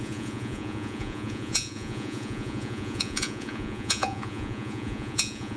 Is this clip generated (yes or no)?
yes